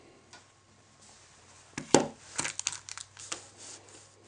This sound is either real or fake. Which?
real